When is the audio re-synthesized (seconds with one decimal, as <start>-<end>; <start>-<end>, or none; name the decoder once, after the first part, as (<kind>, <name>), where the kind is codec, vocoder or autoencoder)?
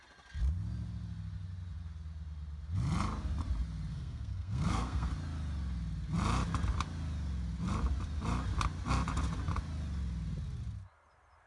3.9-5.1 (codec, SNAC)